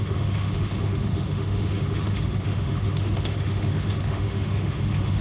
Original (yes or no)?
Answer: no